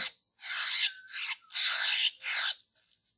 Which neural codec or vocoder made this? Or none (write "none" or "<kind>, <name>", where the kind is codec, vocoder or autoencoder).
none